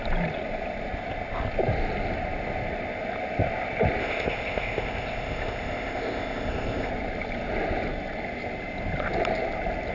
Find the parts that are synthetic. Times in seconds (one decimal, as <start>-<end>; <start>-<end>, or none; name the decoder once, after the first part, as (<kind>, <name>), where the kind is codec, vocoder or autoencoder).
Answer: 4.0-6.9 (codec, ZipCodec)